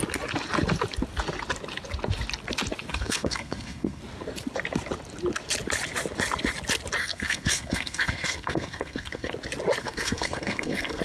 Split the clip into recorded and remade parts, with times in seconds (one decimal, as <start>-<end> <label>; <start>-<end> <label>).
0.0-2.9 recorded; 2.9-4.0 remade; 4.0-7.0 recorded; 7.0-9.3 remade; 9.3-9.8 recorded; 9.8-11.0 remade